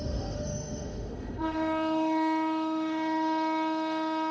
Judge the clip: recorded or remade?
remade